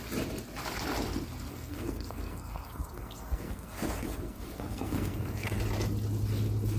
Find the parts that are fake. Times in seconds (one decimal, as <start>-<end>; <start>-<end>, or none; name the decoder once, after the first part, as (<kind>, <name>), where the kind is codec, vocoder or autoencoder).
1.5-5.6 (codec, SNAC)